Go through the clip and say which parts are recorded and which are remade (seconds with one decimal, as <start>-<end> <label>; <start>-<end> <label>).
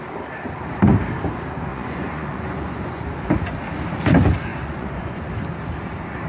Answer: 0.0-1.7 recorded; 1.7-3.0 remade; 3.0-4.5 recorded; 4.5-5.3 remade; 5.3-6.3 recorded